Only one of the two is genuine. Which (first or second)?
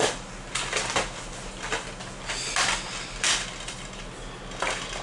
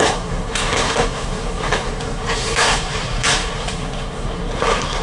first